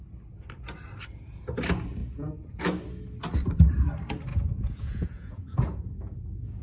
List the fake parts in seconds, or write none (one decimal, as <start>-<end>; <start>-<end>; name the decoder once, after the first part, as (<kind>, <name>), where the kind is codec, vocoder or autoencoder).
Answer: 2.0-2.6 (vocoder, Vocos); 4.3-6.6